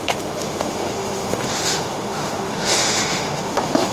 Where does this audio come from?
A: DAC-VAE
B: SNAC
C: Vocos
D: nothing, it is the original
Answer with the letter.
A